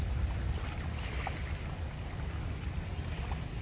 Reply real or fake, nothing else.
real